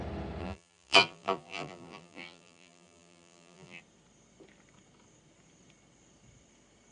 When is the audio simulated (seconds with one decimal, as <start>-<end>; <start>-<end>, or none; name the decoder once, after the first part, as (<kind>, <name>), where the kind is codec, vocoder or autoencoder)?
0.4-3.8 (vocoder, BigVGAN v2)

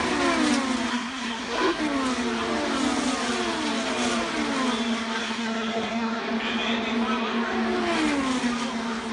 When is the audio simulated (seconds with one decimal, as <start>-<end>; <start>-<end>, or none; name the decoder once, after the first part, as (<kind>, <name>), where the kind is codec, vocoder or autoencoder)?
0.9-1.8 (codec, SNAC); 5.2-6.2